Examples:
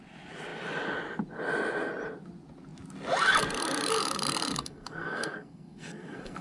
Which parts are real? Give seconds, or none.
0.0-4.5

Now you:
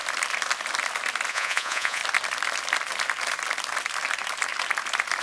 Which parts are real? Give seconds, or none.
0.0-1.3; 2.0-5.2

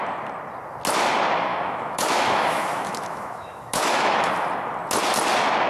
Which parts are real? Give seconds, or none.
0.0-1.5; 4.3-5.7

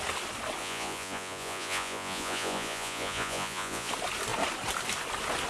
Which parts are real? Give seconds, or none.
0.0-0.6; 3.9-5.5